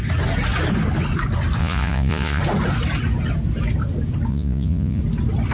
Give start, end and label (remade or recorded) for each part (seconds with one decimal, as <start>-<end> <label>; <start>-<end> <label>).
0.0-1.6 recorded; 1.6-2.4 remade; 2.4-4.3 recorded; 4.3-5.0 remade; 5.0-5.5 recorded